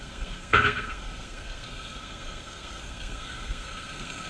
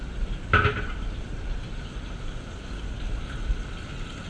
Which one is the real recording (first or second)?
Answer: second